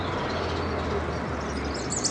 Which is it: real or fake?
real